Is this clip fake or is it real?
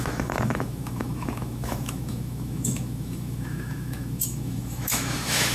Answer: fake